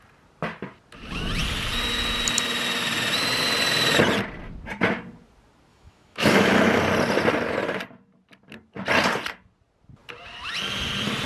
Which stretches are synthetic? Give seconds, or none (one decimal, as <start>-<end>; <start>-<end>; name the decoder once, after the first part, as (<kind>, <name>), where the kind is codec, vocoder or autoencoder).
5.7-6.8 (autoencoder, DAC-VAE)